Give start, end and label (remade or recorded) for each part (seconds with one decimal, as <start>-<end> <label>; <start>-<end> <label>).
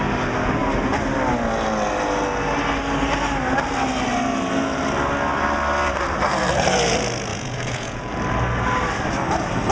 0.0-7.3 recorded; 7.3-8.1 remade; 8.1-9.7 recorded